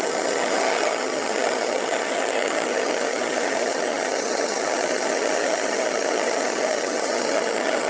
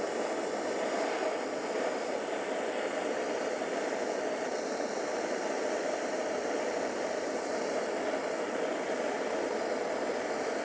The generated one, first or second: first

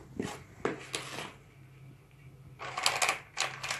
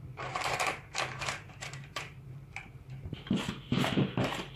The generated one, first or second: second